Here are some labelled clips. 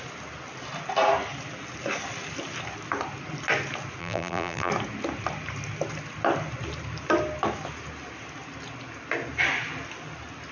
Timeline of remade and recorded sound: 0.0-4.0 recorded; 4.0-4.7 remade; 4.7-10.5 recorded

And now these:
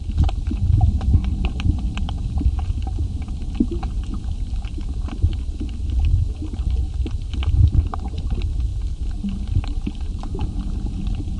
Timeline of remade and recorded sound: 0.0-11.4 recorded

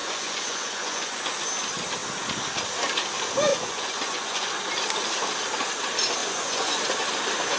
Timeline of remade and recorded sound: 0.0-1.2 remade; 1.2-3.5 recorded; 3.5-4.5 remade; 4.5-6.2 recorded; 6.2-6.8 remade; 6.8-7.6 recorded

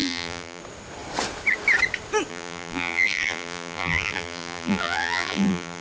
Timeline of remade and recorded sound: 0.0-0.6 remade; 0.6-2.3 recorded; 2.3-5.8 remade

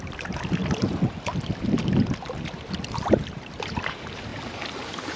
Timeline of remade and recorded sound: 0.0-0.6 remade; 0.6-2.9 recorded; 2.9-4.3 remade; 4.3-4.8 recorded; 4.8-5.2 remade

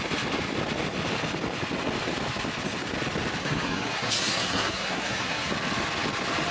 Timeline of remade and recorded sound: 0.0-3.4 recorded; 3.4-5.5 remade; 5.5-6.5 recorded